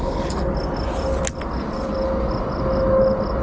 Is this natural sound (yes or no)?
yes